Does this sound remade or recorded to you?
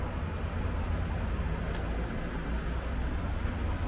recorded